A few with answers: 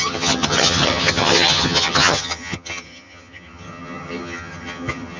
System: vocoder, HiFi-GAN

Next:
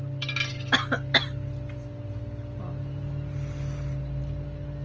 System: none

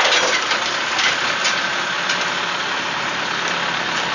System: none